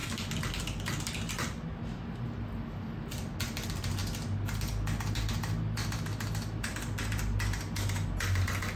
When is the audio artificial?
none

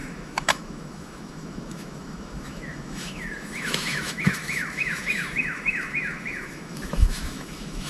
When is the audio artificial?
0.0-7.9 (autoencoder, DAC-VAE)

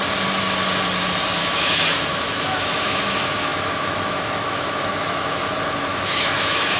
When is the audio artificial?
1.4-5.5 (autoencoder, DAC-VAE); 5.9-6.8